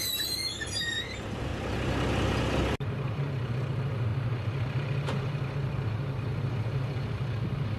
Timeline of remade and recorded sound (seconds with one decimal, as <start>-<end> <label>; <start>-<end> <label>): 0.0-1.5 remade; 1.5-2.9 recorded; 2.9-7.8 remade